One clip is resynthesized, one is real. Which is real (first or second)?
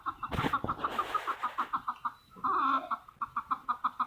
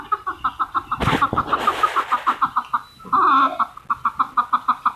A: second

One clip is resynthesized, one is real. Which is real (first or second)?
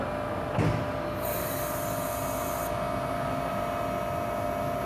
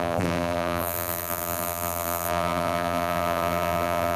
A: first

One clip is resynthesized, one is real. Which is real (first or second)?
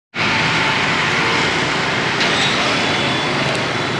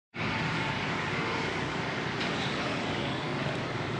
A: first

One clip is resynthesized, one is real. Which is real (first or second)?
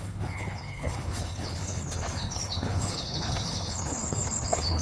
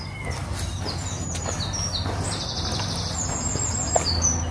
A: second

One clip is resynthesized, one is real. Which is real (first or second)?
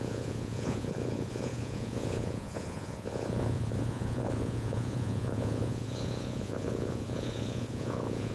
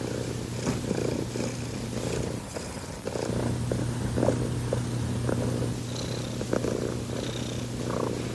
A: second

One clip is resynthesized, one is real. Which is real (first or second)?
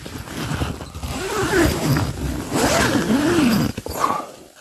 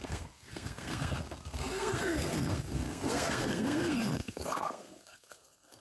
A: first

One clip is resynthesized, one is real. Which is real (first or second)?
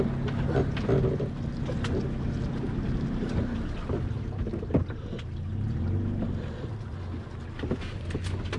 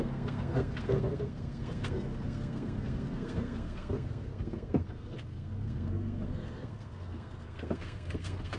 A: first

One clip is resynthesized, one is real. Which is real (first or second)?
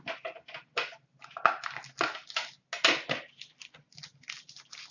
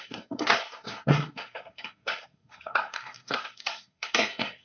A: first